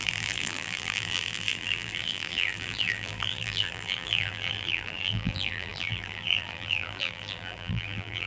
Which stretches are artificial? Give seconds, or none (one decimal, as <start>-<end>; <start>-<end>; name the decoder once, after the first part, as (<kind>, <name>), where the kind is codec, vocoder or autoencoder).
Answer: 0.0-8.3 (vocoder, BigVGAN v2)